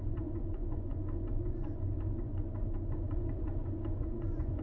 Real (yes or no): no